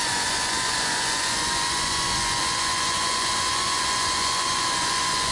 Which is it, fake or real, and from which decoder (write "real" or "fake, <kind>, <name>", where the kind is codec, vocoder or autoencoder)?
fake, vocoder, Vocos